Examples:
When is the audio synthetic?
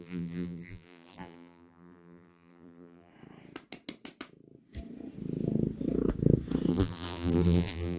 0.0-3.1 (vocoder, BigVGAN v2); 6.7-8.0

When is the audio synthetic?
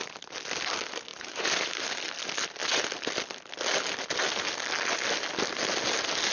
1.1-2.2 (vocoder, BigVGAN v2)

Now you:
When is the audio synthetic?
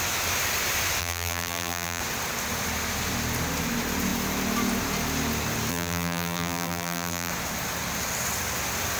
1.0-2.0 (vocoder, BigVGAN v2); 5.7-7.3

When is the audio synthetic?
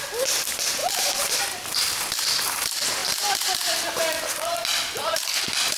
0.8-1.4 (vocoder, BigVGAN v2)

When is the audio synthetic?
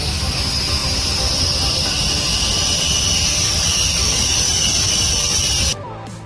none